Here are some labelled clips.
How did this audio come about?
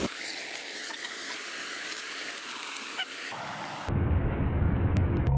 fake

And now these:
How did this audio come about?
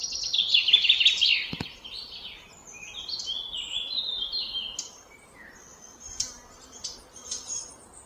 real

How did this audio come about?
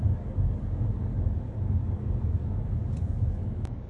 fake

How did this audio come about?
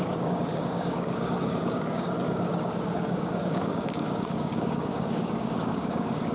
fake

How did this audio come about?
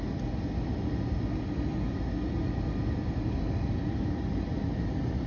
real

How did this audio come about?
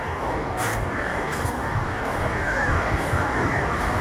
fake